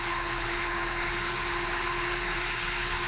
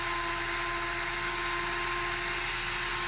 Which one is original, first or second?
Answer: second